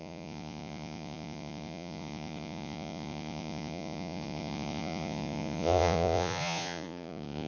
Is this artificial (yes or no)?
yes